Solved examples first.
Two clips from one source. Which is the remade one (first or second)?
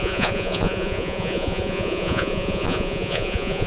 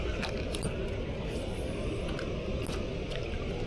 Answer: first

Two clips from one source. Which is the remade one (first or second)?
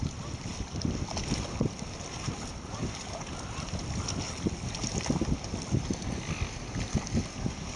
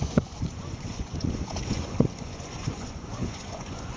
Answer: second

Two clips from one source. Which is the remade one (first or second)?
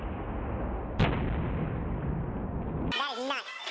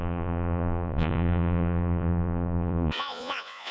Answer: second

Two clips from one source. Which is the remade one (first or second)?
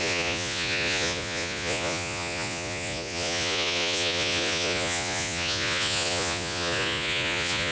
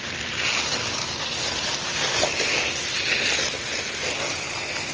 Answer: first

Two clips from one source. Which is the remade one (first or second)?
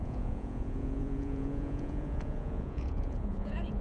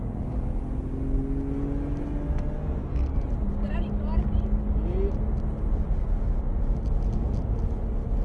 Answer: first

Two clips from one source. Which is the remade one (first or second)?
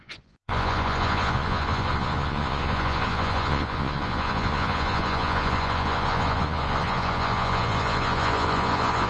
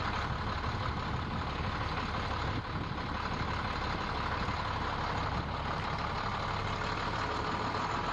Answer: first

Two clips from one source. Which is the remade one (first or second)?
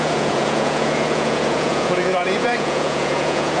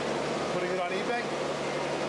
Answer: first